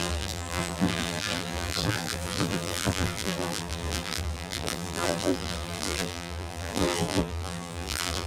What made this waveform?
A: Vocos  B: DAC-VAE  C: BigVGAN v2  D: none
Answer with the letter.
C